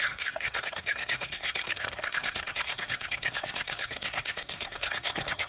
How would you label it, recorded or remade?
remade